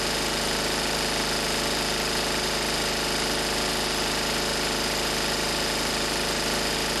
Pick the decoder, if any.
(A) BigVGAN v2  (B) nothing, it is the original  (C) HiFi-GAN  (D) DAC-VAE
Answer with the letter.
B